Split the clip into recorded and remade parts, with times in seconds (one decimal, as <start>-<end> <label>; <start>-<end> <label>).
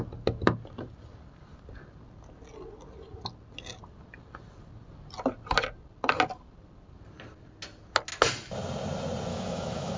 0.0-9.3 recorded; 9.3-10.0 remade